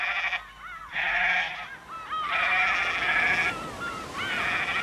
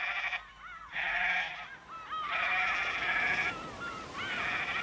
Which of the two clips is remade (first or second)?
second